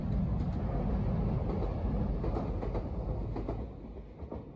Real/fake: real